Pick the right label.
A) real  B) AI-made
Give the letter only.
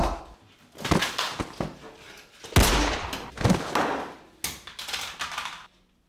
A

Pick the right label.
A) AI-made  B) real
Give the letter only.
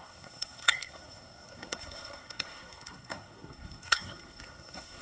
A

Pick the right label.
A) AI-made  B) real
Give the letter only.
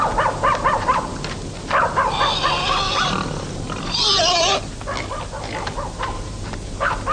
B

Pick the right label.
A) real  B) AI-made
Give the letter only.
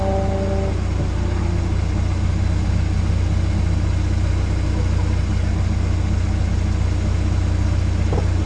A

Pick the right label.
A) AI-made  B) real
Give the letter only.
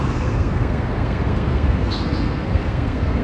A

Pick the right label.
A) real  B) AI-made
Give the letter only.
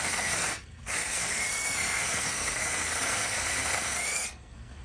B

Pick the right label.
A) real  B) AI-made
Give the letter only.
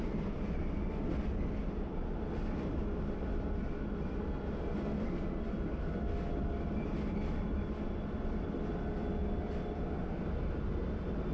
A